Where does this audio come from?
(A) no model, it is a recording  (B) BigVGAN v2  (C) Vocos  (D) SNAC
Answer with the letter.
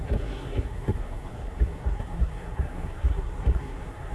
D